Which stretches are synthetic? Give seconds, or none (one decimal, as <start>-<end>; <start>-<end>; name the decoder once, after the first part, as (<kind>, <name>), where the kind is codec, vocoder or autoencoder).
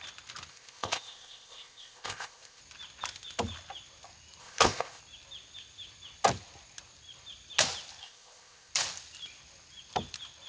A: 0.5-2.6 (codec, ZipCodec); 4.4-5.0; 8.0-8.7